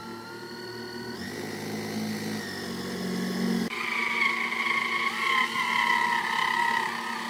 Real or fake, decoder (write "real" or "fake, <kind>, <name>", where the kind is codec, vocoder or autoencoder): real